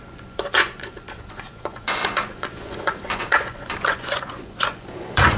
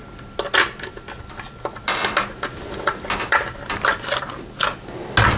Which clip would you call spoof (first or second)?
first